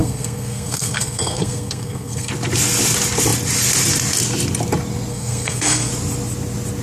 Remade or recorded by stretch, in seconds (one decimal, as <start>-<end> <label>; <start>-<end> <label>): 0.0-2.3 remade; 2.3-5.1 recorded; 5.1-5.9 remade; 5.9-6.8 recorded